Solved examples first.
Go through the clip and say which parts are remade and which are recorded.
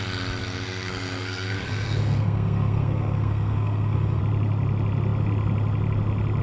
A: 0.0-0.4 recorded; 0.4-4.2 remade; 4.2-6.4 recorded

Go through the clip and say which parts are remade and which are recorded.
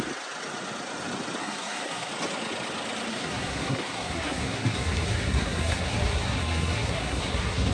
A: 0.0-1.4 recorded; 1.4-2.1 remade; 2.1-3.1 recorded; 3.1-7.7 remade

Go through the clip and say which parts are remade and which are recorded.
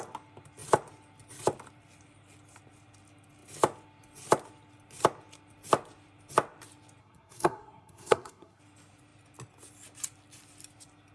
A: 0.0-7.0 recorded; 7.0-8.6 remade; 8.6-11.1 recorded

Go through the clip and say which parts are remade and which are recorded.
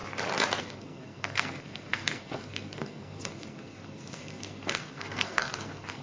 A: 0.0-0.6 recorded; 0.6-6.0 remade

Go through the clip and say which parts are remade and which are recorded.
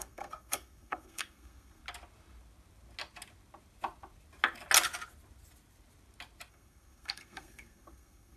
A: 0.0-1.8 remade; 1.8-6.5 recorded; 6.5-8.4 remade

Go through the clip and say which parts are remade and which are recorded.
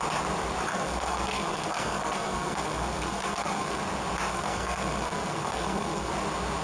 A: 0.0-0.7 recorded; 0.7-3.8 remade; 3.8-4.3 recorded; 4.3-6.1 remade; 6.1-6.6 recorded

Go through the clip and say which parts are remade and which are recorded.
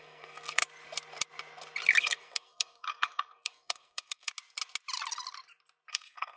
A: 0.0-0.6 remade; 0.6-2.0 recorded; 2.0-4.3 remade; 4.3-5.9 recorded; 5.9-6.4 remade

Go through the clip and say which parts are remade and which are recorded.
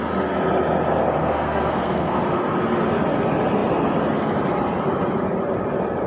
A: 0.0-1.2 recorded; 1.2-2.2 remade; 2.2-6.1 recorded